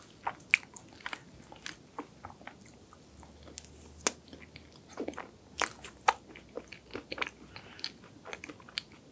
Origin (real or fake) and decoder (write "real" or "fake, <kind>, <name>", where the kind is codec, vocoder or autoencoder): real